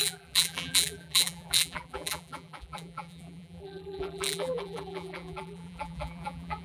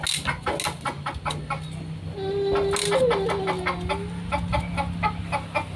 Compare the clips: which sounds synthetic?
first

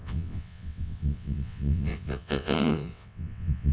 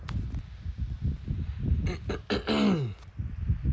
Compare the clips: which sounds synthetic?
first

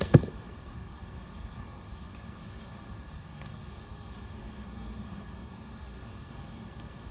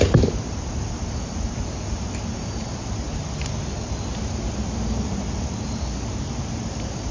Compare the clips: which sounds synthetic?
first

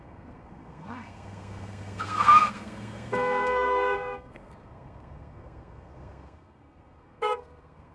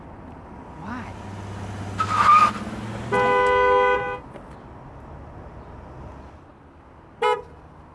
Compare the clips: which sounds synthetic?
first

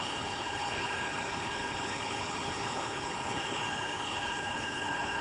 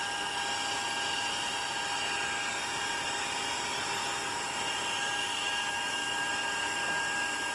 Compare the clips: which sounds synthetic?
first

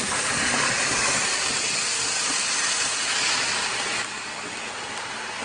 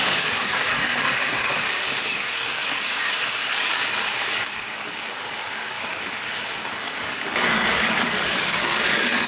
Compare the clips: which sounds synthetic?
second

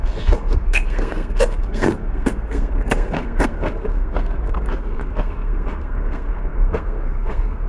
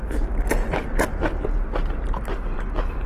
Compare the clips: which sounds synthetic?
first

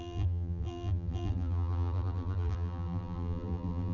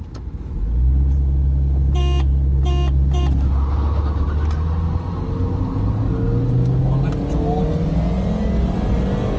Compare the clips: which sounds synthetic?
first